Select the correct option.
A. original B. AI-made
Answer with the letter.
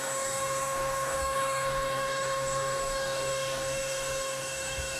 B